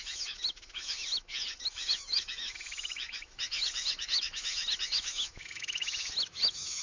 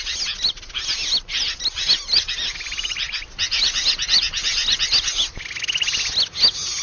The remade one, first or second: first